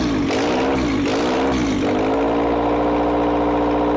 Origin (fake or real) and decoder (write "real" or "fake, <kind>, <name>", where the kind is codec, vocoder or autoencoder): real